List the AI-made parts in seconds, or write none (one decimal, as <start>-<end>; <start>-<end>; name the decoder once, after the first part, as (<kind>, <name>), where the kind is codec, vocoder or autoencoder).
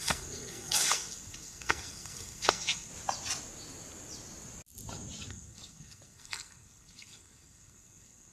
0.0-2.9 (codec, SNAC); 5.3-8.3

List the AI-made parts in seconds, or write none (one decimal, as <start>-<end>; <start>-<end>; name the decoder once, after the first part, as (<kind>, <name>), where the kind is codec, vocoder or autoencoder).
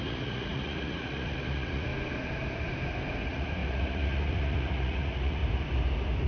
0.0-1.9 (vocoder, Vocos); 3.2-5.4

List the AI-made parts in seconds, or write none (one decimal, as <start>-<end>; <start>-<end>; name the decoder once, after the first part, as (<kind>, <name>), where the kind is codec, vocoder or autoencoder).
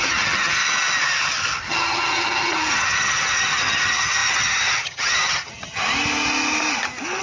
0.0-0.6 (vocoder, HiFi-GAN); 1.7-5.8